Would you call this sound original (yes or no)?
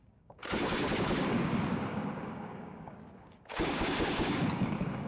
no